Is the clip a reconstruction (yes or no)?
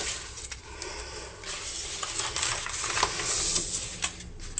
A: no